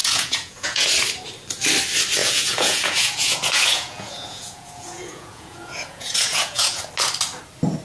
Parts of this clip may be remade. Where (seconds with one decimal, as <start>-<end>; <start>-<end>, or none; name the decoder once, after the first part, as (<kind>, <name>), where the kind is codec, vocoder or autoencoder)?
0.0-0.9 (vocoder, Vocos); 2.2-6.9